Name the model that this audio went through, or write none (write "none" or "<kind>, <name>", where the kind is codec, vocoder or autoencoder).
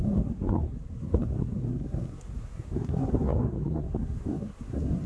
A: codec, SNAC